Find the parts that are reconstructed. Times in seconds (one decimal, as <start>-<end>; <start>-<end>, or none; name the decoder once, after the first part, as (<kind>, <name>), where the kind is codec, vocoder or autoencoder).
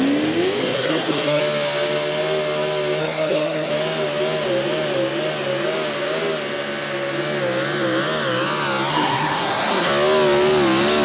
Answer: 0.6-1.4 (codec, SNAC); 3.0-3.7; 8.9-9.9